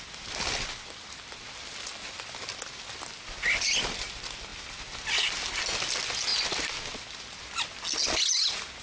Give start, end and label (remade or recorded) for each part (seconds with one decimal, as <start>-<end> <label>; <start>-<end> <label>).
0.0-8.8 recorded